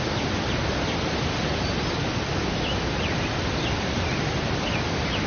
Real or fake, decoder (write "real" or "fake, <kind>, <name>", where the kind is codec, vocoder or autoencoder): fake, vocoder, BigVGAN v2